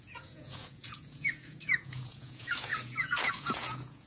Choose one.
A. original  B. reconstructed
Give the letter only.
B